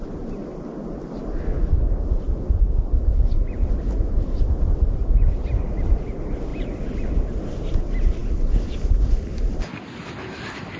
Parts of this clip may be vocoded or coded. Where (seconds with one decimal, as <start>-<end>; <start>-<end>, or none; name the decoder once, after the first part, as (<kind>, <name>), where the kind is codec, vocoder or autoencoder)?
none